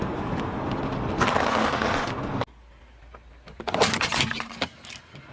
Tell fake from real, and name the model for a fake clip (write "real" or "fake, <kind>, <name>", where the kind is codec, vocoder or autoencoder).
real